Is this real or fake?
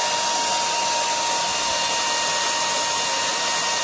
real